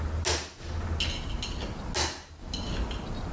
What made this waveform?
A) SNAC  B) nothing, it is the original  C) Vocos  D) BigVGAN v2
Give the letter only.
B